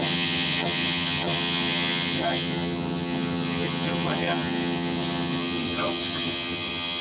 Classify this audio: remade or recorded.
remade